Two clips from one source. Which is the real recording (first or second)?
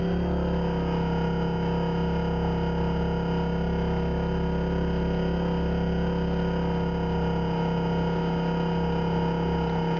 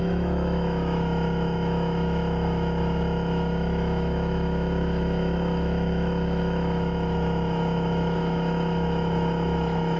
first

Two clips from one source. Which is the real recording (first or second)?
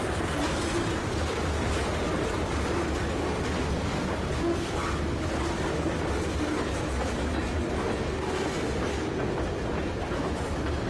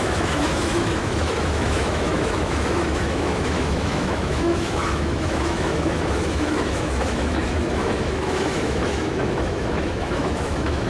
first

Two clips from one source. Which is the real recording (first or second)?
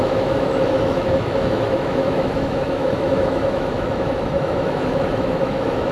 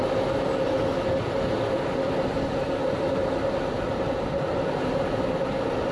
second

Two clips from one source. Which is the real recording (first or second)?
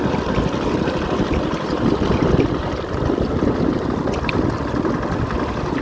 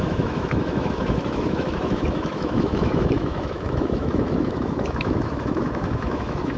first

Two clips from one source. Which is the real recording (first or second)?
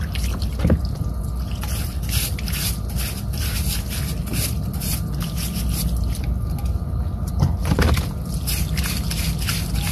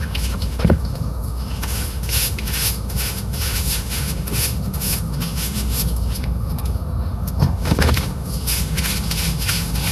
first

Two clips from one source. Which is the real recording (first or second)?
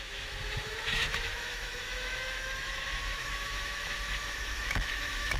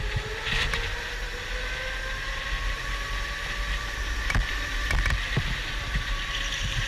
second